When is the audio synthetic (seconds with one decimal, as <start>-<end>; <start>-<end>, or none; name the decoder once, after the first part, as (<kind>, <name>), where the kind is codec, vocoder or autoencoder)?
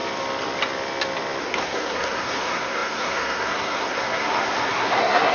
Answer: 1.4-5.3 (codec, SNAC)